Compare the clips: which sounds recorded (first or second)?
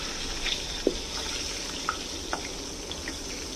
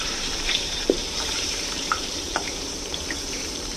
first